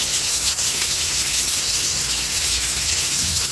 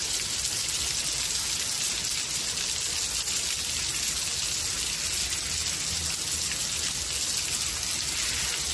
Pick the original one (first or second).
second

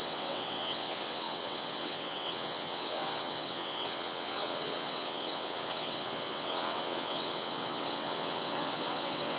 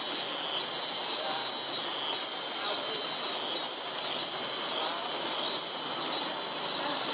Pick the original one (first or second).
second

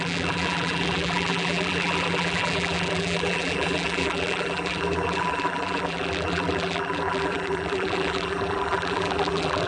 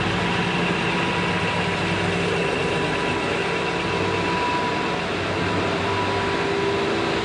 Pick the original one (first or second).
second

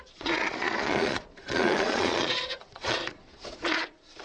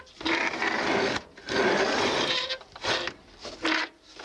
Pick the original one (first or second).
second